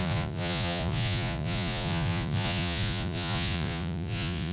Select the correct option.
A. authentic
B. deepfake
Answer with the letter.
B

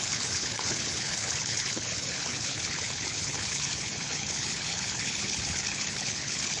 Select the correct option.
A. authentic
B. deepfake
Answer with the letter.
B